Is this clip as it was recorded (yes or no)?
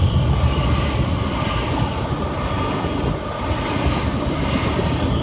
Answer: yes